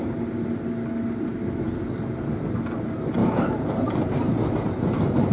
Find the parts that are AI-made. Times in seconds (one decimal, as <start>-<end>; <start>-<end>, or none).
3.2-5.3